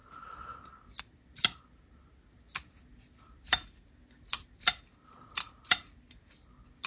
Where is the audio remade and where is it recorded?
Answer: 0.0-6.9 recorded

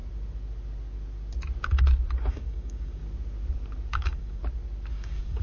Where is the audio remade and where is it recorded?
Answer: 0.0-2.3 recorded; 2.3-3.0 remade; 3.0-3.9 recorded; 3.9-4.4 remade; 4.4-4.9 recorded; 4.9-5.4 remade

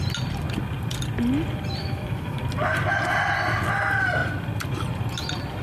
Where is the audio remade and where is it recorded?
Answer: 0.0-1.8 recorded; 1.8-2.4 remade; 2.4-5.6 recorded

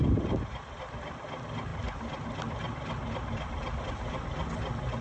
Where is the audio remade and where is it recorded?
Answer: 0.0-5.0 recorded